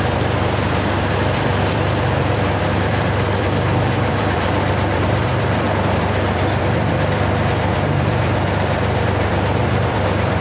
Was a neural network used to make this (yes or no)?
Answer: yes